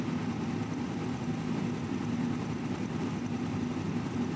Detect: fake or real real